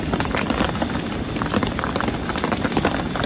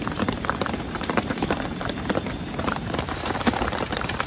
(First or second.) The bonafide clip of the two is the first